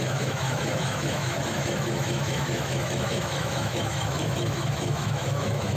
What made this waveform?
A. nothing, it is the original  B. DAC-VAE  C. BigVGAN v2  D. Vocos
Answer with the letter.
B